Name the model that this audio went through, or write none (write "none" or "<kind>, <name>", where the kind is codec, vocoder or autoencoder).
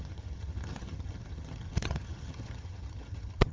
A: vocoder, HiFi-GAN